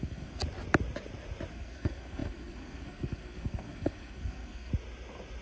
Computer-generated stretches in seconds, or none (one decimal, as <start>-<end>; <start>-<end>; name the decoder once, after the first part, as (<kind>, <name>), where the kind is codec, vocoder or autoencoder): 0.0-0.4 (codec, SNAC); 1.5-4.7